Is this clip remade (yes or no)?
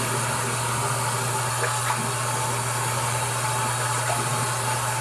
no